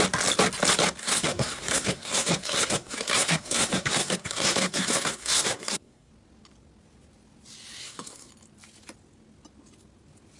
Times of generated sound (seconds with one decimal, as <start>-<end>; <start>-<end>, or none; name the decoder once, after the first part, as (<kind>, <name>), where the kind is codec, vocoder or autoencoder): 1.0-6.1 (codec, SNAC); 7.8-8.3